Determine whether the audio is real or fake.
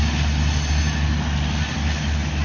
real